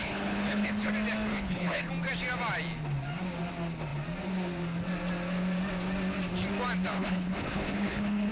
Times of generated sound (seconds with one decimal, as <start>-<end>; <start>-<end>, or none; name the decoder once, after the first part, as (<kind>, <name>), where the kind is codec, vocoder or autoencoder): 0.0-0.9 (codec, HILCodec); 1.3-1.9; 6.9-8.3

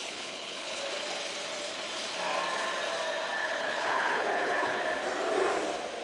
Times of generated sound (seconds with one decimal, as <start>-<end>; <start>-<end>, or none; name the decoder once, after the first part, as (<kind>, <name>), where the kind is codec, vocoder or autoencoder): 0.0-0.8 (codec, HILCodec); 3.4-4.8

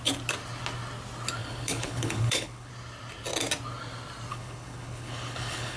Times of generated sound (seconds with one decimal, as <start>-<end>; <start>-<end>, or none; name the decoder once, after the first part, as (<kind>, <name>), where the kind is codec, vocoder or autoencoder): 1.4-2.7 (codec, HILCodec); 4.3-5.8

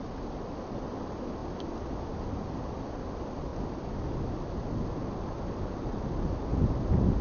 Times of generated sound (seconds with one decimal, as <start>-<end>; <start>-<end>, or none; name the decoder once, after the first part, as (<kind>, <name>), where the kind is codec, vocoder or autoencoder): none

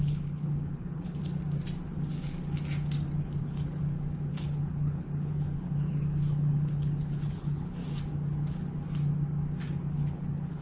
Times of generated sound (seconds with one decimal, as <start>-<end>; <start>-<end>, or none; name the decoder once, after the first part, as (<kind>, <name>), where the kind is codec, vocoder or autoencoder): 0.0-1.2 (codec, HILCodec); 3.4-3.8; 4.3-7.8; 9.8-10.6

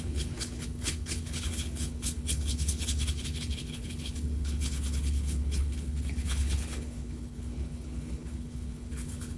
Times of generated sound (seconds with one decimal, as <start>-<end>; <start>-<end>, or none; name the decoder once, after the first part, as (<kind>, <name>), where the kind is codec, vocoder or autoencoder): 0.0-9.4 (codec, HILCodec)